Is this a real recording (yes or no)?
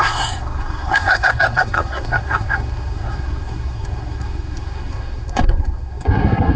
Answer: no